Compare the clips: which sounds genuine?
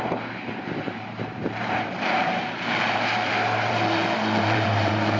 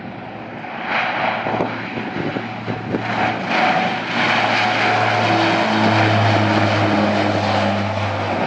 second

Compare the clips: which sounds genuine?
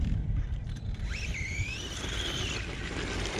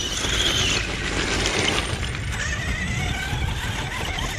second